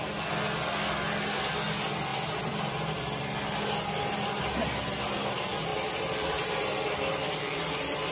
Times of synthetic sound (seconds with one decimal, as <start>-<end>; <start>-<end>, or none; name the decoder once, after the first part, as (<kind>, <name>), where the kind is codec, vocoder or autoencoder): 5.7-6.8 (vocoder, BigVGAN v2)